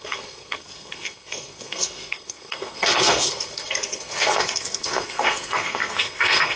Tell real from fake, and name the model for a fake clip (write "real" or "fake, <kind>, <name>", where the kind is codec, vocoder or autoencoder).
fake, codec, SNAC